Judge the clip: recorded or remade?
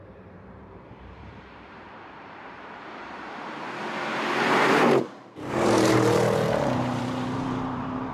remade